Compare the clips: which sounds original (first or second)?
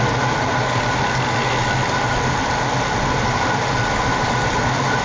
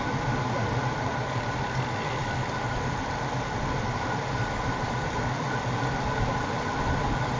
first